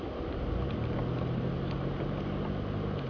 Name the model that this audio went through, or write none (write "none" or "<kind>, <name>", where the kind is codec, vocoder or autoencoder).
none